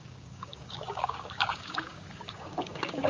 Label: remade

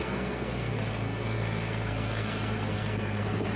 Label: remade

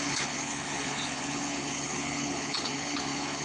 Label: remade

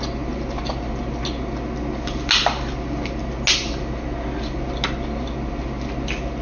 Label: recorded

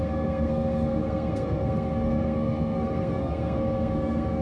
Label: remade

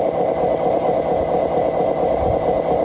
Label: recorded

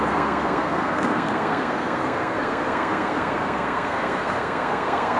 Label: remade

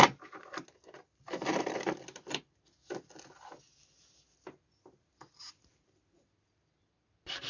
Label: recorded